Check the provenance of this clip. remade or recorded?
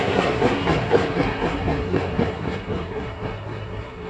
remade